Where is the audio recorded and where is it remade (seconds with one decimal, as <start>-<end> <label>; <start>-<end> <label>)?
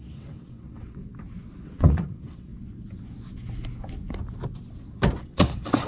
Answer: 0.0-1.0 remade; 1.0-1.6 recorded; 1.6-2.5 remade; 2.5-5.2 recorded; 5.2-5.9 remade